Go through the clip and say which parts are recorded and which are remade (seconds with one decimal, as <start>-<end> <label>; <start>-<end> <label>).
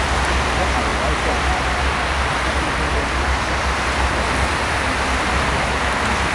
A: 0.0-6.3 recorded